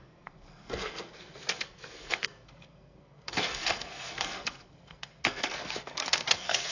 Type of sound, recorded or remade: remade